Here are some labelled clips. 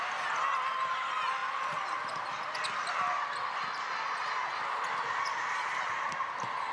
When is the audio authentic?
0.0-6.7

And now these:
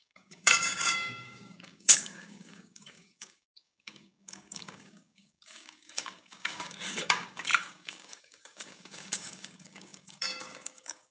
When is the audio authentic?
none

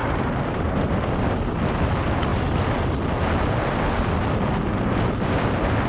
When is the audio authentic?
0.8-5.9

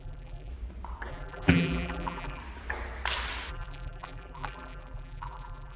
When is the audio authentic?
0.5-1.1; 2.4-3.5

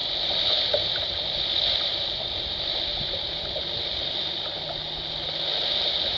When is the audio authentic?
0.6-2.9; 4.3-6.2

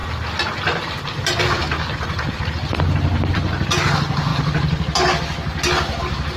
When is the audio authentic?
0.0-6.4